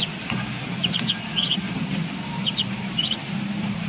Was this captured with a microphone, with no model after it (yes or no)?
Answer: yes